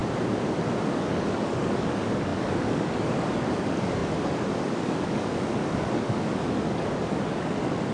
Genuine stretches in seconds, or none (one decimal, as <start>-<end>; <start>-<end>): 0.0-0.8